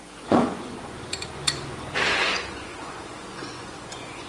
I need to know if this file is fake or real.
fake